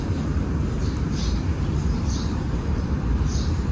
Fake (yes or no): yes